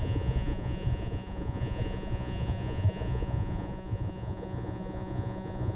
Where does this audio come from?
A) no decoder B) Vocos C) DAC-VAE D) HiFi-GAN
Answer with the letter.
B